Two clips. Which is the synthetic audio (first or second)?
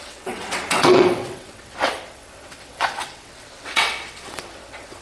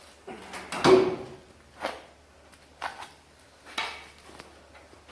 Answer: first